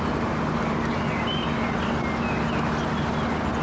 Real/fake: real